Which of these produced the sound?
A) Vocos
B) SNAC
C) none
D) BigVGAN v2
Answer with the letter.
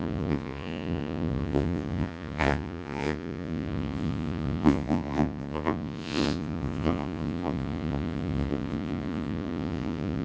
A